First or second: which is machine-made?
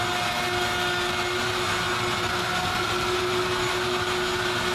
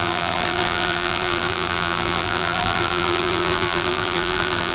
second